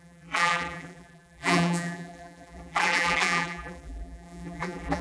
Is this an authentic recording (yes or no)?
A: no